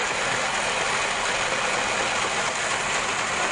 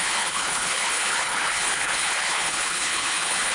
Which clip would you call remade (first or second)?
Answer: second